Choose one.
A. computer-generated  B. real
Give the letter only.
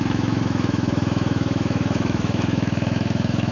A